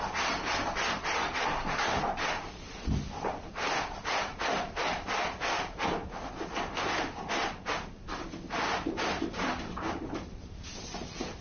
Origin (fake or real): real